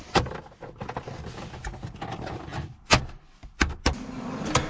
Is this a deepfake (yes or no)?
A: no